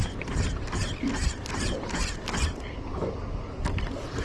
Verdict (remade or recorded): recorded